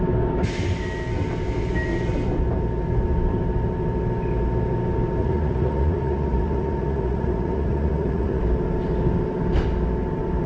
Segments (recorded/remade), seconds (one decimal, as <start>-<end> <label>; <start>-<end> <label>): 0.0-5.2 recorded; 5.2-8.4 remade; 8.4-10.5 recorded